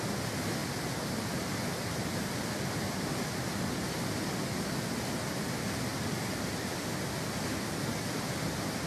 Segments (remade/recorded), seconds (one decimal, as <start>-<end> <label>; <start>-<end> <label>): 0.0-8.9 recorded